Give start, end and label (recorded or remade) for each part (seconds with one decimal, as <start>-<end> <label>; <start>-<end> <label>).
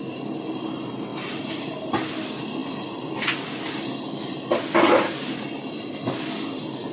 0.0-6.9 recorded